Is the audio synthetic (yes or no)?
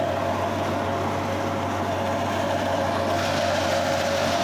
no